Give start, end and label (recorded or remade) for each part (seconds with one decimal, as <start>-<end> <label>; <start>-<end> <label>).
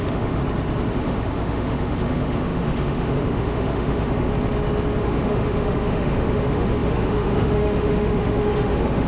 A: 0.0-0.4 remade; 0.4-0.9 recorded; 0.9-4.3 remade; 4.3-5.0 recorded; 5.0-9.1 remade